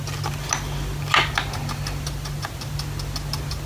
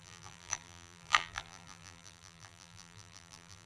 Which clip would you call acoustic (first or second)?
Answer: first